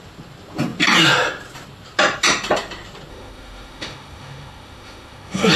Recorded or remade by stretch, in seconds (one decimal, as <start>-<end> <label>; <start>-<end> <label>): 0.0-3.1 recorded; 3.1-5.6 remade